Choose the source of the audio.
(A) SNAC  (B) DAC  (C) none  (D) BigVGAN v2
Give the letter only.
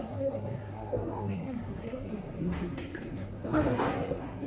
A